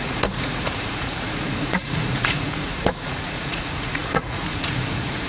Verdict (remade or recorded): remade